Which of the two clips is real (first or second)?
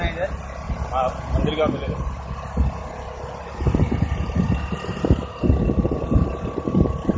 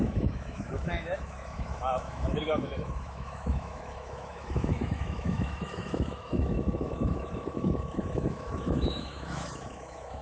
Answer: first